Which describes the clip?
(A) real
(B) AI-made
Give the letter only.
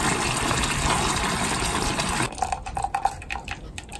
A